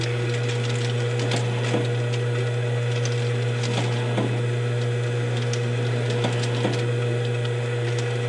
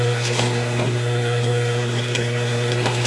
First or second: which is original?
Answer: first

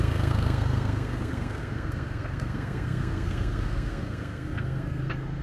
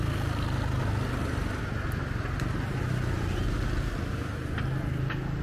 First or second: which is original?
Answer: second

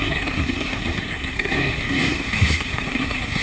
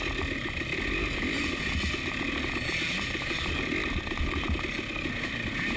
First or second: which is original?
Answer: second